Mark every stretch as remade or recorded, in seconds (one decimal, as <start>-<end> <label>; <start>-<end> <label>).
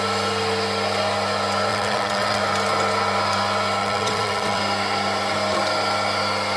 0.0-1.7 recorded; 1.7-2.4 remade; 2.4-3.8 recorded; 3.8-4.6 remade; 4.6-6.6 recorded